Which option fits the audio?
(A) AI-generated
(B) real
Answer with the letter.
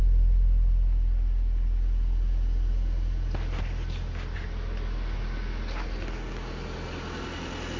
B